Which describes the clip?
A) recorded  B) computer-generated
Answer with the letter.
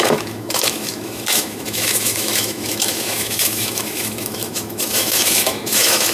B